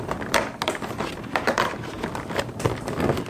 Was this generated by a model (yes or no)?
no